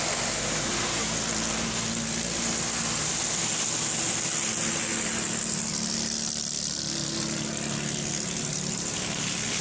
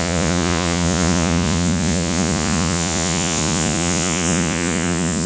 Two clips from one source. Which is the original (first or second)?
first